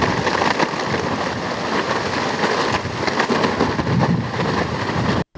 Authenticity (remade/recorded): recorded